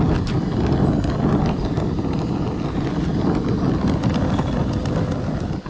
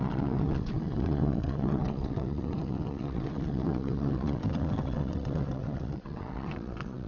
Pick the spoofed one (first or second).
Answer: second